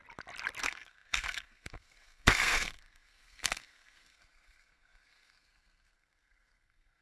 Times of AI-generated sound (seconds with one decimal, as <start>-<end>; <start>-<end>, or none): 0.6-7.0